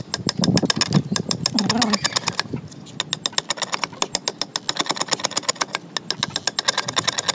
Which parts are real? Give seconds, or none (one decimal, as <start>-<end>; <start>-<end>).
0.0-7.3